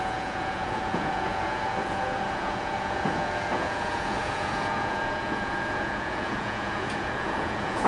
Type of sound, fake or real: fake